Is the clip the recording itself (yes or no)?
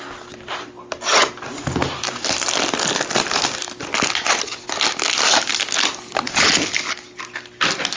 yes